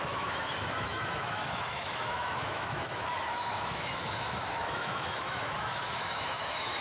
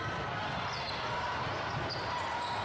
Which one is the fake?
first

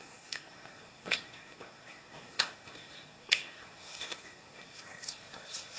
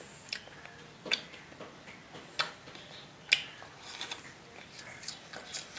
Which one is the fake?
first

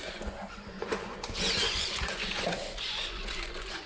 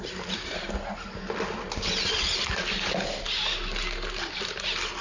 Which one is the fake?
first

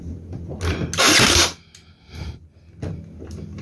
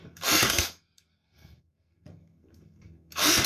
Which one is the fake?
second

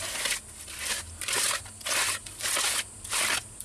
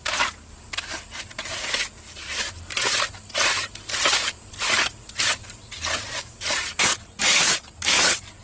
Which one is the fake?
second